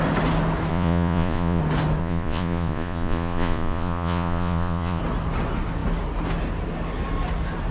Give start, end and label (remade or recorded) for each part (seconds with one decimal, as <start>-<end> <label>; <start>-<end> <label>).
0.0-0.7 recorded; 0.7-1.6 remade; 1.6-2.0 recorded; 2.0-5.0 remade; 5.0-7.7 recorded